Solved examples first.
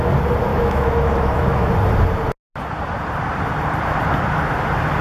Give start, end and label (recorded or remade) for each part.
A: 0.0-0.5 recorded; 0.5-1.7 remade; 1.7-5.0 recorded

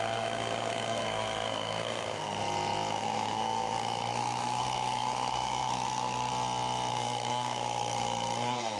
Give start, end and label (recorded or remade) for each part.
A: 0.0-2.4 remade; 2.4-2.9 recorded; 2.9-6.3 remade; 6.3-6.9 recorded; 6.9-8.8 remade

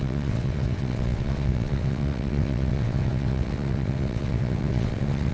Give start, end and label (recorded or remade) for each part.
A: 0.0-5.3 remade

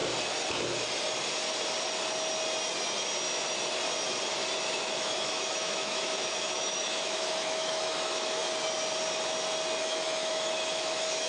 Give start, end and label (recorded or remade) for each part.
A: 0.0-4.7 recorded; 4.7-8.4 remade; 8.4-9.8 recorded; 9.8-11.3 remade